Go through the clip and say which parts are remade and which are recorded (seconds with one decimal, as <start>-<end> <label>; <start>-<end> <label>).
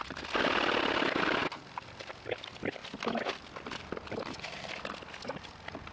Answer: 0.0-5.9 recorded